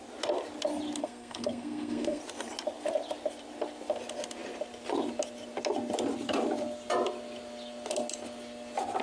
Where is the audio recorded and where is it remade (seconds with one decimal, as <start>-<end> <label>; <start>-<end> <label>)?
0.0-1.0 recorded; 1.0-2.2 remade; 2.2-9.0 recorded